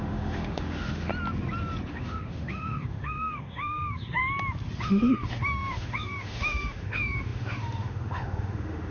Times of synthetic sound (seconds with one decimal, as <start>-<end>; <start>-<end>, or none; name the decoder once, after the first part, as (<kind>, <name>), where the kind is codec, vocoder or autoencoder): 0.0-1.1 (autoencoder, DAC-VAE); 1.9-4.2; 4.8-8.9